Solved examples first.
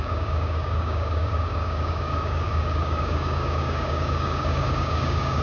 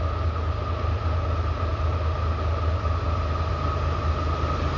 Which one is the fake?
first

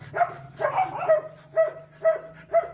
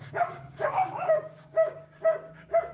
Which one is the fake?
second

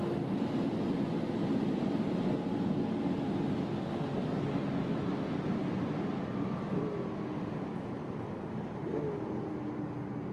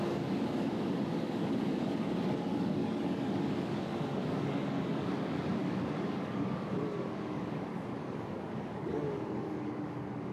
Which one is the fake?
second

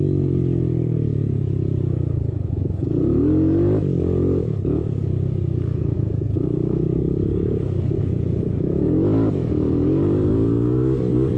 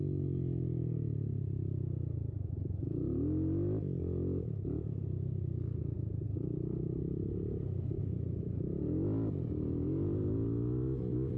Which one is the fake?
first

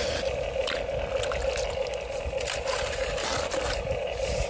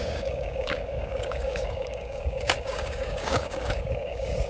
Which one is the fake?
second